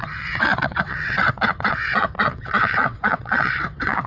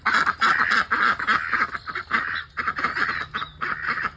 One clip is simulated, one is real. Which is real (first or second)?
second